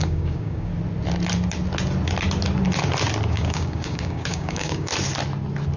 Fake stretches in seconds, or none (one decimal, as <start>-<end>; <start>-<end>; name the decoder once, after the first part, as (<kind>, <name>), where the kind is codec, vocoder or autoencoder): 0.0-0.7 (codec, DAC); 3.3-4.9